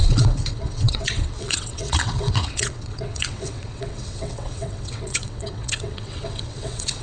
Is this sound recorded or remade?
remade